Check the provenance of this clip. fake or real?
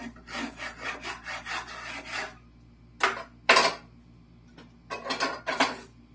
real